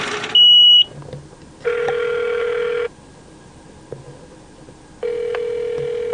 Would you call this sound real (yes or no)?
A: yes